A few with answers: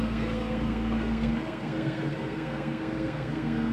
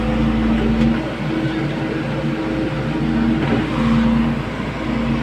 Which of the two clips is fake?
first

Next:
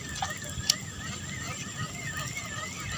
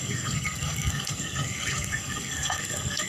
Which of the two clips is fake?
second